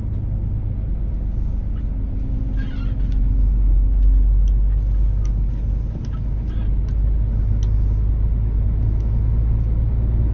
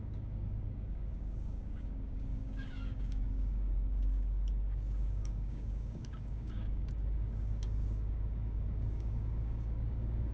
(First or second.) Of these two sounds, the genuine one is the first